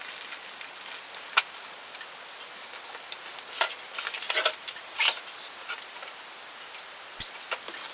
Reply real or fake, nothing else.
real